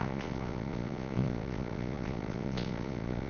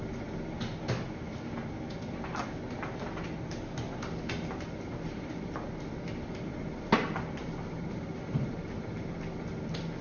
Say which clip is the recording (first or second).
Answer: second